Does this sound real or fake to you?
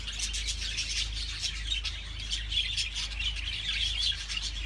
real